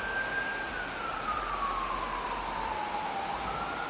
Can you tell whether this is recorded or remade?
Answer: recorded